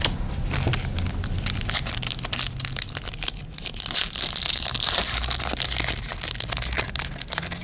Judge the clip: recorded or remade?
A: recorded